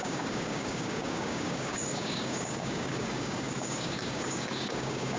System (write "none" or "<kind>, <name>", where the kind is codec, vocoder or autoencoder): codec, DAC